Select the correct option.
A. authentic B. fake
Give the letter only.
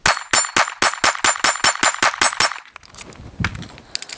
A